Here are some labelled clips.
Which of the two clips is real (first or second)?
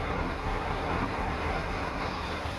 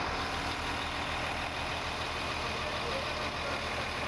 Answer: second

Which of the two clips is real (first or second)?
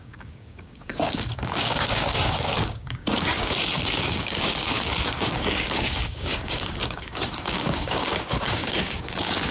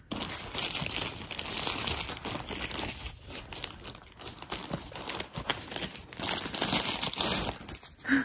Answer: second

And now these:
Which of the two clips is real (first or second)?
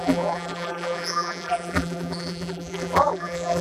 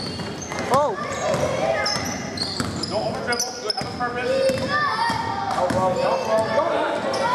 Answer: second